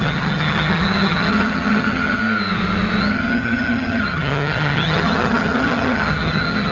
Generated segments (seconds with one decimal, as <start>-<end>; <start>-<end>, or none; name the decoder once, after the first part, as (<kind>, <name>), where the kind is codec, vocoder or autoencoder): 0.0-2.2 (vocoder, HiFi-GAN); 3.0-6.7